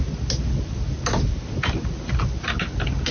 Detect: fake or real real